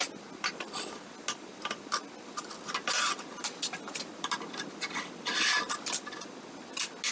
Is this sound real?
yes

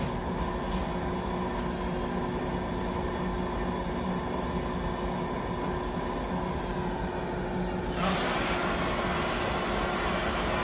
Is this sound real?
yes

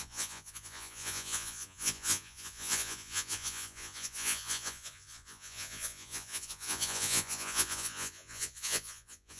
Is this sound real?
no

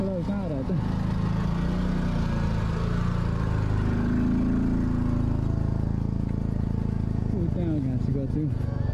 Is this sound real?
yes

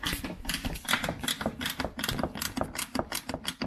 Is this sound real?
yes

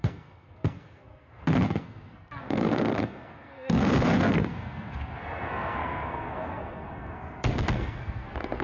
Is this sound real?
no